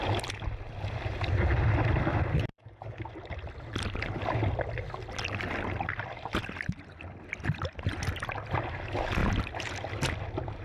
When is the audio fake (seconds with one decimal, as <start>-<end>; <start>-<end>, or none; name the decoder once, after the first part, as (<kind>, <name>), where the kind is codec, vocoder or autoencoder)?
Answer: 2.5-3.0 (codec, DAC)